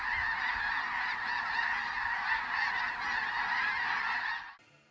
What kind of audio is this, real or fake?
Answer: real